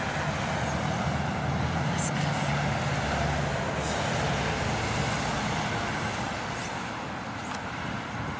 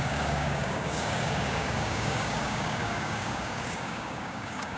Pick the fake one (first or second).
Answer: second